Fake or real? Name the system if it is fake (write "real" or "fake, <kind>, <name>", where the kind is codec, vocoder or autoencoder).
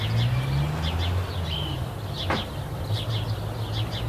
real